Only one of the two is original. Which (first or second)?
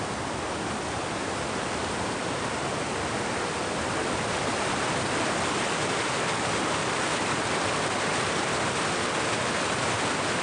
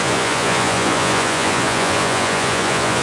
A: first